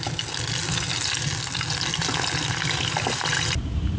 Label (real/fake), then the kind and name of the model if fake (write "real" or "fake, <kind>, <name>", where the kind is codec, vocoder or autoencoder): real